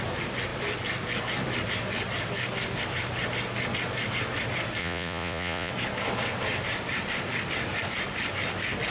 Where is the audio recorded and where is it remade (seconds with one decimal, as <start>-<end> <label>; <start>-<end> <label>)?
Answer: 0.0-4.8 recorded; 4.8-5.7 remade; 5.7-8.9 recorded